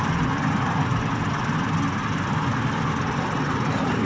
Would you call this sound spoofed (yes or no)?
no